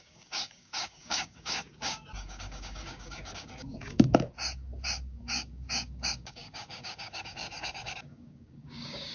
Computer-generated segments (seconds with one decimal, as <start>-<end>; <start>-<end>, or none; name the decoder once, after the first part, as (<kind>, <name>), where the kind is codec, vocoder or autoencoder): 0.0-9.1 (codec, DAC)

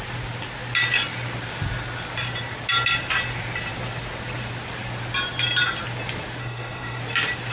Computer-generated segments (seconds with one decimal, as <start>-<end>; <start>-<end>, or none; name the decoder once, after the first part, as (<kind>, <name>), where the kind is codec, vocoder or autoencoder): 6.4-7.0 (codec, SNAC)

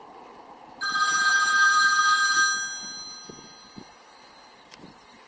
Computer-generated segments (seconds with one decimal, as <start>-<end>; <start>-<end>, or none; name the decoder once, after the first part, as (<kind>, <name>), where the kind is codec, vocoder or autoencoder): none

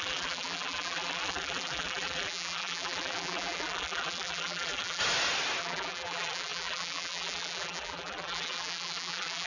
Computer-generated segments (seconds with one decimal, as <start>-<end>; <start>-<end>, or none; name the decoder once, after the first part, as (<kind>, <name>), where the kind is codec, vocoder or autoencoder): 0.0-5.0 (vocoder, BigVGAN v2); 5.6-9.5

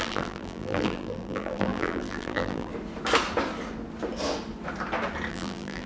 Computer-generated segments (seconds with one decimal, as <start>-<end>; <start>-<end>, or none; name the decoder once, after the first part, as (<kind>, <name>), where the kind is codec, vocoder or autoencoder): 0.0-2.7 (vocoder, BigVGAN v2); 5.3-5.9

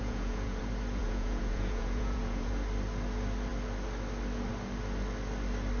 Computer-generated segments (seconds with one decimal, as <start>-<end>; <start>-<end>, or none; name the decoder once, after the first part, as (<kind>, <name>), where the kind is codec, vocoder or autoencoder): 0.0-0.6 (vocoder, Vocos); 1.0-2.5

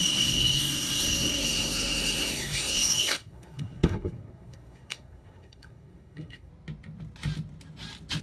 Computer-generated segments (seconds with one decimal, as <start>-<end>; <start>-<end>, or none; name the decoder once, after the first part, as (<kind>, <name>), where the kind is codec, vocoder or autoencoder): 0.0-6.5 (codec, SNAC)